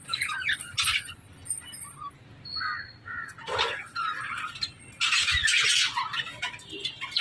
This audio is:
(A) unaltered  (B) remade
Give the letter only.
A